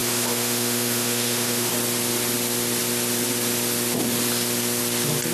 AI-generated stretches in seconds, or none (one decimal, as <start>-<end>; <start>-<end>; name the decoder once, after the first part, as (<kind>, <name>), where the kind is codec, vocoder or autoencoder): 0.0-1.7 (autoencoder, DAC-VAE)